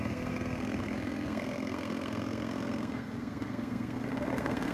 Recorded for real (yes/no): no